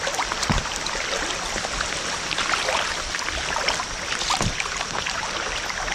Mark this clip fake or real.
real